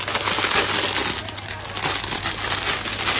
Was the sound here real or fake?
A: real